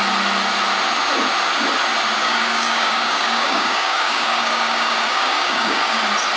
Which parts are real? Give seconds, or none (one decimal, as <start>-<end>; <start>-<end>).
0.0-2.2; 6.0-6.4